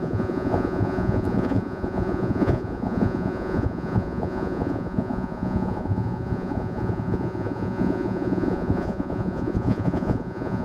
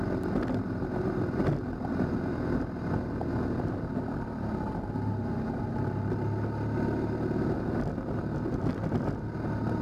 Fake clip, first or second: first